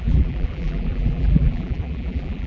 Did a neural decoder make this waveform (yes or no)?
yes